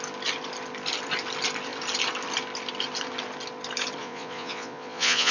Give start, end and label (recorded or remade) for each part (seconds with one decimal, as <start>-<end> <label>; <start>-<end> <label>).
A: 0.0-4.0 recorded; 4.0-5.3 remade